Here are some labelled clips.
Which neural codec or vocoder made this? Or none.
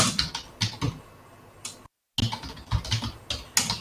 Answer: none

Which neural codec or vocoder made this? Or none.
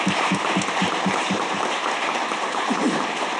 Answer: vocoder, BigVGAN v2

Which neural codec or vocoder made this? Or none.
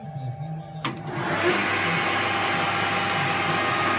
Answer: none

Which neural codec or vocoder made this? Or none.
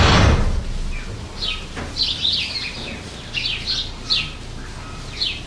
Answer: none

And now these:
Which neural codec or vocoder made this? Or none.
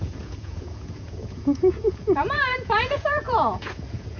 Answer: vocoder, Vocos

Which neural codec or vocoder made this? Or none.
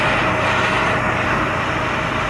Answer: vocoder, BigVGAN v2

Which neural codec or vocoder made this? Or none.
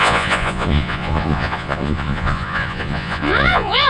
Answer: vocoder, Vocos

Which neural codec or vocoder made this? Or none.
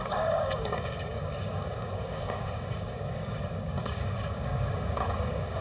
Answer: codec, DAC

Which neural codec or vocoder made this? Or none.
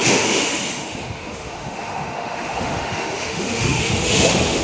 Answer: autoencoder, DAC-VAE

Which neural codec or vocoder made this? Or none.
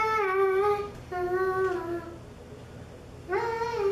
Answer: none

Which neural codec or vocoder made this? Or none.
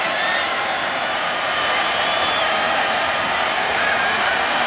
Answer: vocoder, BigVGAN v2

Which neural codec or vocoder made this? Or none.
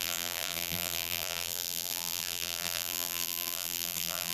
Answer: vocoder, BigVGAN v2